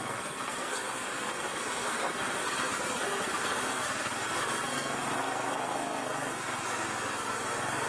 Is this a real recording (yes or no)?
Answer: no